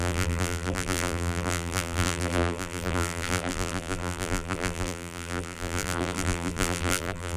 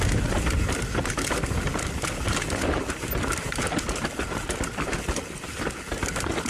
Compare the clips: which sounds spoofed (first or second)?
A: first